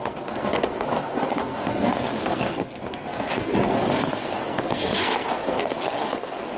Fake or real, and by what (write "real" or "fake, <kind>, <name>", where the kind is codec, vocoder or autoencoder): fake, codec, SNAC